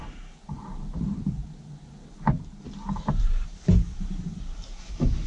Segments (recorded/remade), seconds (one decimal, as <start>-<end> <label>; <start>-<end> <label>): 0.0-1.4 remade; 1.4-3.2 recorded; 3.2-5.3 remade